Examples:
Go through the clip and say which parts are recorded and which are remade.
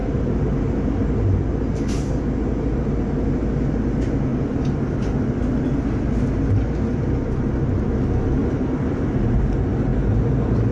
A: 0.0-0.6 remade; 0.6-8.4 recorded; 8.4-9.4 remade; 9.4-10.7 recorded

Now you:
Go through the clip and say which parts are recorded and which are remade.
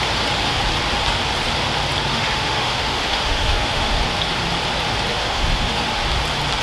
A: 0.0-2.1 recorded; 2.1-4.0 remade; 4.0-5.1 recorded; 5.1-5.8 remade; 5.8-6.6 recorded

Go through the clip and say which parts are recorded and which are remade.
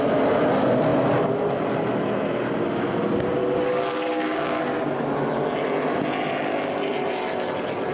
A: 0.0-3.4 recorded; 3.4-4.6 remade; 4.6-7.9 recorded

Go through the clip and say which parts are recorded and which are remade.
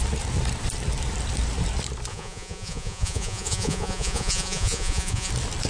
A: 0.0-2.1 recorded; 2.1-5.3 remade; 5.3-5.7 recorded